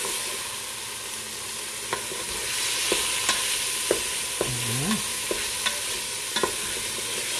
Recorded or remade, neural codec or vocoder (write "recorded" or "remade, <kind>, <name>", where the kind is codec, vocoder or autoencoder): recorded